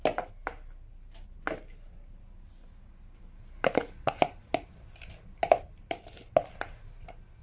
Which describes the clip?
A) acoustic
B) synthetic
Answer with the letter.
A